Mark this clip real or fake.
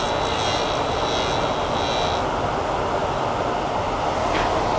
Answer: real